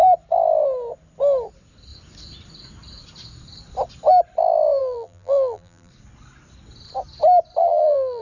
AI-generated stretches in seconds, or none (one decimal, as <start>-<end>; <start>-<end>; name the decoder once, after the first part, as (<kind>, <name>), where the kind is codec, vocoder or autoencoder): 4.8-5.9 (vocoder, BigVGAN v2); 7.6-8.2